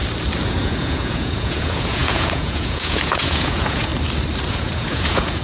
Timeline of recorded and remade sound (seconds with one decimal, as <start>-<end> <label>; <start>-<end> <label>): 0.0-0.5 recorded; 0.5-3.9 remade; 3.9-4.5 recorded; 4.5-5.4 remade